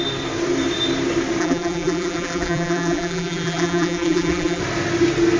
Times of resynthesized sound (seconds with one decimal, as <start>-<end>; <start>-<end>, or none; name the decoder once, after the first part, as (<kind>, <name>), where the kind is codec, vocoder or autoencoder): 1.4-4.6 (vocoder, BigVGAN v2)